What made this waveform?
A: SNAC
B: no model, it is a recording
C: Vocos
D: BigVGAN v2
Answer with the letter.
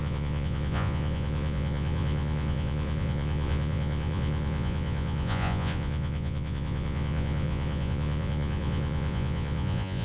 C